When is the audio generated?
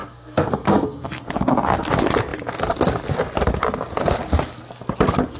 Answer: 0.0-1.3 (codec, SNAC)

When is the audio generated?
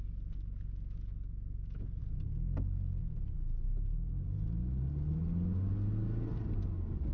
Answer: none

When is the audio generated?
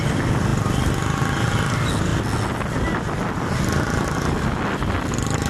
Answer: none